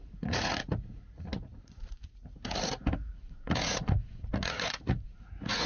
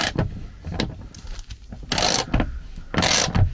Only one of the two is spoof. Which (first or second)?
first